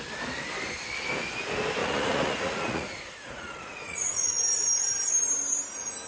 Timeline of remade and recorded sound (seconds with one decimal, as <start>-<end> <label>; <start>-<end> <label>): 0.0-1.8 recorded; 1.8-4.4 remade; 4.4-6.1 recorded